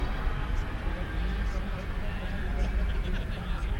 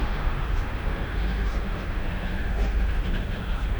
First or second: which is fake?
second